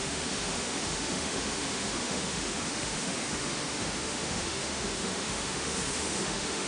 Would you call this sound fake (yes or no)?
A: yes